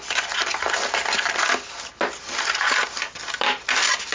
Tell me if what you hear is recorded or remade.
recorded